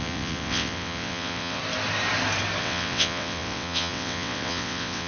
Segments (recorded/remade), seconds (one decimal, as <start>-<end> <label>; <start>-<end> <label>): 0.0-1.6 remade; 1.6-2.6 recorded; 2.6-5.1 remade